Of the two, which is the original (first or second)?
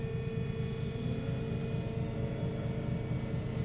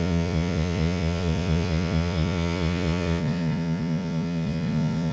first